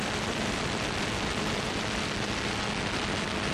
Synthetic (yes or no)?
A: no